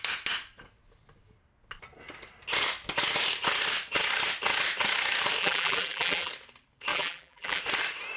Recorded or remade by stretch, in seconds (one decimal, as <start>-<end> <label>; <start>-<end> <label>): 0.0-5.4 recorded; 5.4-6.3 remade; 6.3-6.9 recorded; 6.9-7.6 remade; 7.6-8.2 recorded